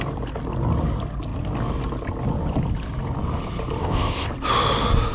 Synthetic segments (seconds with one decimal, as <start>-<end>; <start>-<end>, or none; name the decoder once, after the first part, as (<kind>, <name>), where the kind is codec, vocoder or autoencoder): 3.8-4.3 (codec, ZipCodec)